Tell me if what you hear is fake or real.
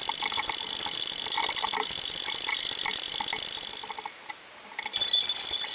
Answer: real